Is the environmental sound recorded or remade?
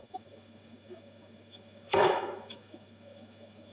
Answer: remade